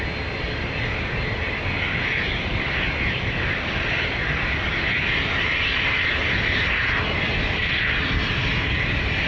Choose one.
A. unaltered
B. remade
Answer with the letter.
A